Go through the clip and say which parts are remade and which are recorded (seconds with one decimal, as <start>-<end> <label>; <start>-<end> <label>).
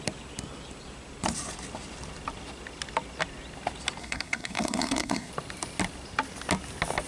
0.0-4.0 recorded; 4.0-5.3 remade; 5.3-7.1 recorded